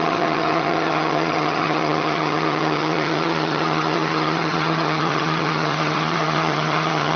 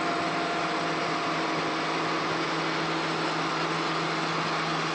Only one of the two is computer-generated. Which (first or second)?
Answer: first